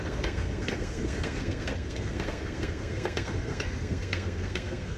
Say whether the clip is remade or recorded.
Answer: remade